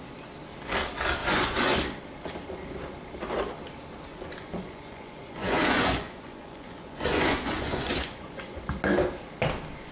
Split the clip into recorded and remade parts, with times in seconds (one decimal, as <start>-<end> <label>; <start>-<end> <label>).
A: 0.0-1.2 recorded; 1.2-1.8 remade; 1.8-4.1 recorded; 4.1-8.6 remade; 8.6-9.9 recorded